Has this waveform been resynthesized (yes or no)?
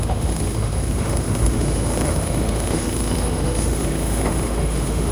yes